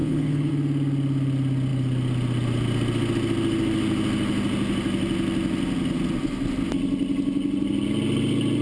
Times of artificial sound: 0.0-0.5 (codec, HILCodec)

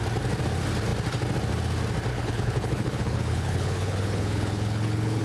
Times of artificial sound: 2.1-5.2 (codec, HILCodec)

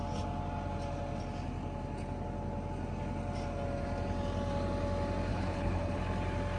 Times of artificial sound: 5.3-6.0 (codec, HILCodec)

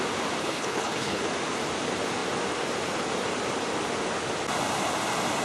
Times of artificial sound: 0.4-1.2 (codec, HILCodec)

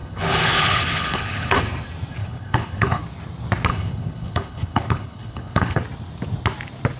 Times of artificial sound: 0.0-1.6 (codec, HILCodec); 2.2-3.0; 3.7-5.8

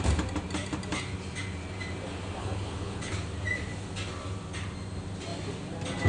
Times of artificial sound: 2.4-3.1 (codec, HILCodec)

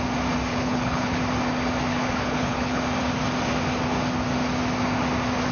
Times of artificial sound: 0.5-1.2 (codec, HILCodec); 1.9-2.8

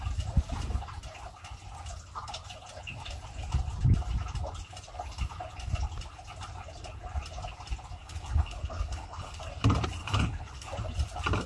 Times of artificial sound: 8.0-9.4 (codec, HILCodec); 10.0-10.7